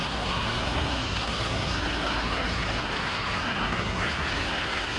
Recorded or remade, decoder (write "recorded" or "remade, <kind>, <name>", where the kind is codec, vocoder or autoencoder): remade, codec, SNAC